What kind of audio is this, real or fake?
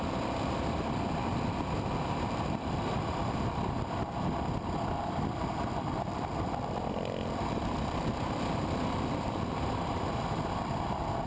real